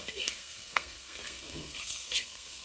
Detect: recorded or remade remade